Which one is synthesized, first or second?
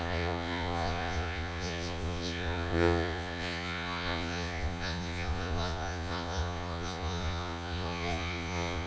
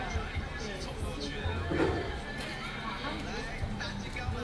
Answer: first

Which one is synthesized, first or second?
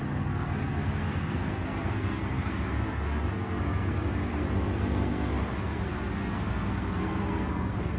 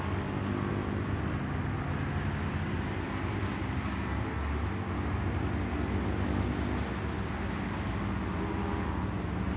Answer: first